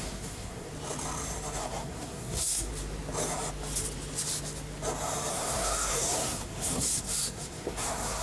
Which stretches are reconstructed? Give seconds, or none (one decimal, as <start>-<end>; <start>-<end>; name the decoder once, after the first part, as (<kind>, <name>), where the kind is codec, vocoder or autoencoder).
0.0-0.7 (codec, SNAC); 1.6-2.7; 5.3-8.2